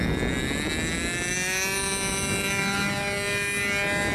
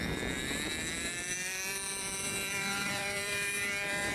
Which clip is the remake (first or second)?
second